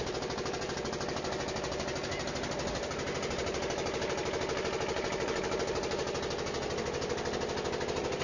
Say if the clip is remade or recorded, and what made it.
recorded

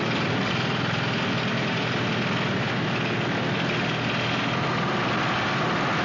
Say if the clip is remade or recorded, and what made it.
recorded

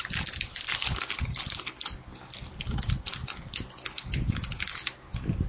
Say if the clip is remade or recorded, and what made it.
recorded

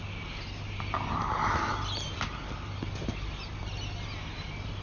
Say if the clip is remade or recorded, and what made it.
recorded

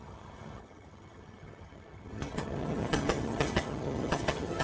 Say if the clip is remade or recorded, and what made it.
remade, vocoder, HiFi-GAN